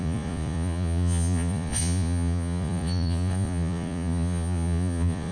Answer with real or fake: fake